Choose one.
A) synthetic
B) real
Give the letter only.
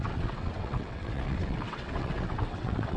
A